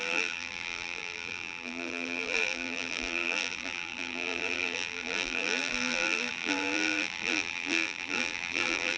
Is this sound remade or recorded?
remade